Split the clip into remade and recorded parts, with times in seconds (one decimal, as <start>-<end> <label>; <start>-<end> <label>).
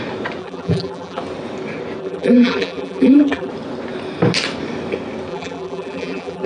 0.0-0.4 recorded; 0.4-1.2 remade; 1.2-2.0 recorded; 2.0-3.5 remade; 3.5-5.3 recorded; 5.3-6.5 remade